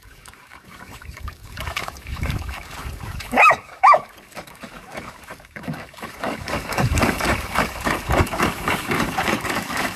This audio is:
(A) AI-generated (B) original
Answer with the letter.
A